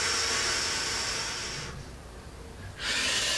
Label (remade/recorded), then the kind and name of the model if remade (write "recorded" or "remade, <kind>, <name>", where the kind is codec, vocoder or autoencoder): recorded